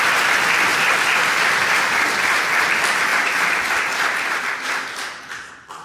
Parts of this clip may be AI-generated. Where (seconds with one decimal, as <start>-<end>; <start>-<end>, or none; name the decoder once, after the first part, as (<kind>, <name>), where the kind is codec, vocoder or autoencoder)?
0.0-5.8 (vocoder, BigVGAN v2)